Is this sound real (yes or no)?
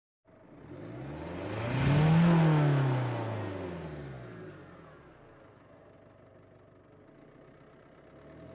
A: yes